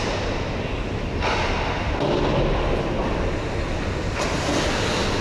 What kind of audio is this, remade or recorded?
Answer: recorded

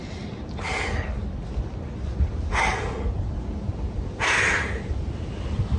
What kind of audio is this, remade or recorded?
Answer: recorded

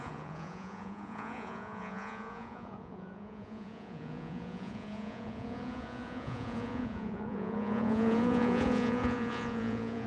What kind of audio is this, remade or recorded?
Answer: remade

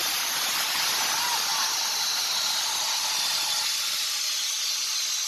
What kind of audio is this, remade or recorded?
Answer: recorded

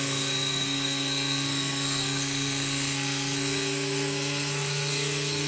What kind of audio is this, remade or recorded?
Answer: remade